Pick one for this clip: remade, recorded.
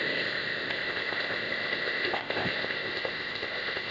remade